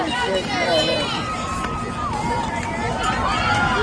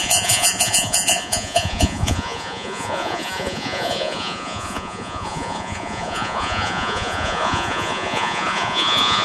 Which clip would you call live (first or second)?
first